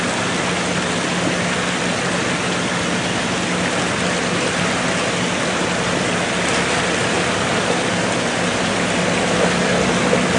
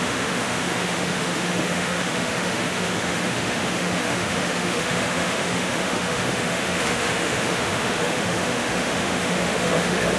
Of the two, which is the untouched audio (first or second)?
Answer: first